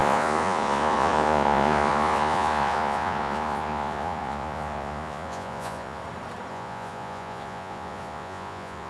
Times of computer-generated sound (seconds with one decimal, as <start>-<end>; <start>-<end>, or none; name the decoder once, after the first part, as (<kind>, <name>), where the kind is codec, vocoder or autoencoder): 0.0-6.0 (vocoder, Vocos); 6.5-8.9

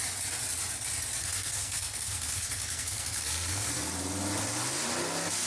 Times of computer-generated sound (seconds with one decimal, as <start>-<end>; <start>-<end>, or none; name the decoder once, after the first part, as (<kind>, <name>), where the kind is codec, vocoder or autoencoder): 1.2-3.7 (codec, SNAC)

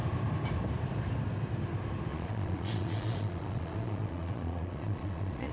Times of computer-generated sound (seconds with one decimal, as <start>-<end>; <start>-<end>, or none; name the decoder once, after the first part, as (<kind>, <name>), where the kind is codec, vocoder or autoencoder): 2.1-5.5 (vocoder, Vocos)

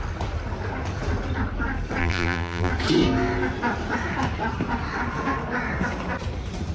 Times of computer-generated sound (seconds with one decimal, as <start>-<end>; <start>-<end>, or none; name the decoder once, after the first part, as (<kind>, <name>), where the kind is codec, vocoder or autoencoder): 2.0-2.7 (vocoder, BigVGAN v2)

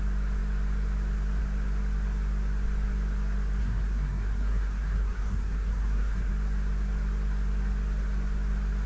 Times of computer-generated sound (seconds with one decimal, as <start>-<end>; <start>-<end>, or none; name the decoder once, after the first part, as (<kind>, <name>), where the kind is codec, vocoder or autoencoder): 3.6-6.3 (codec, SNAC)

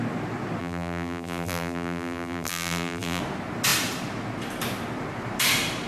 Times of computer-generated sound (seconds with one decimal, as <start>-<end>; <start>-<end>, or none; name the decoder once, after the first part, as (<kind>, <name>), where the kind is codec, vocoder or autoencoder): 0.6-3.2 (vocoder, BigVGAN v2)

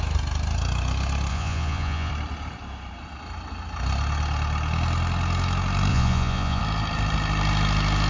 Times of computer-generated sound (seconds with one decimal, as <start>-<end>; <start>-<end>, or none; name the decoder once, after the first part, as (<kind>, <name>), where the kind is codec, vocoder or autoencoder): 1.3-2.1 (vocoder, Vocos); 5.9-6.6